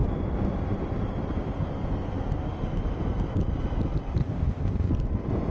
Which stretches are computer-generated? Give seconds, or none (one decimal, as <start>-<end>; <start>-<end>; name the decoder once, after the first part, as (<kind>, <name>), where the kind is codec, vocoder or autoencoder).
4.2-4.9 (codec, ZipCodec)